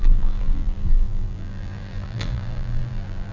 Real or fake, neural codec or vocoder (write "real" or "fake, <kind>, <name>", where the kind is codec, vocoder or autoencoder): fake, vocoder, BigVGAN v2